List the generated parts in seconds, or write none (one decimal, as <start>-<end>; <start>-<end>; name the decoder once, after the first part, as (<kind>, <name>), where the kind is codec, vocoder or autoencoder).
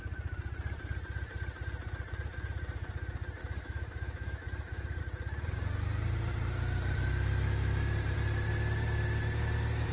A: 3.4-5.0 (autoencoder, DAC-VAE)